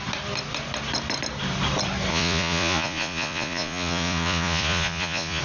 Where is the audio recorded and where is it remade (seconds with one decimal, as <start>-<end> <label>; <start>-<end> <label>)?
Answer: 0.0-2.1 recorded; 2.1-5.4 remade